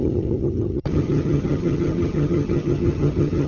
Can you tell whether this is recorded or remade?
remade